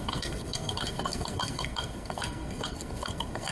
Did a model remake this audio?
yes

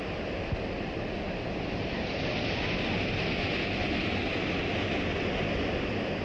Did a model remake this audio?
no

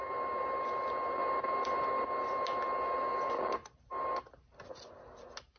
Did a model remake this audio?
no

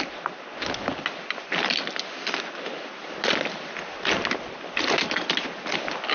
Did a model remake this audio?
no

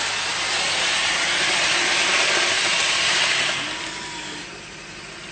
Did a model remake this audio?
no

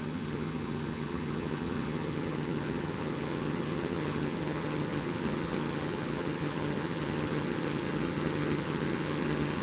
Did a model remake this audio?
yes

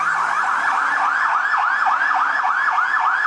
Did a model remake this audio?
no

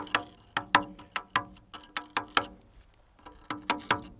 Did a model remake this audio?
no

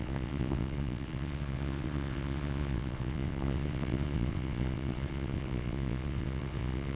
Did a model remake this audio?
yes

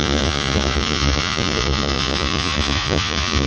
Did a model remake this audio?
yes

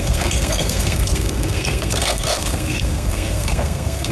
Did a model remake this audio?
yes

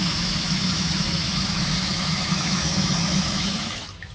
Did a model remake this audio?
yes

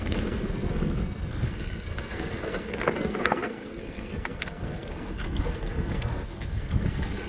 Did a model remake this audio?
yes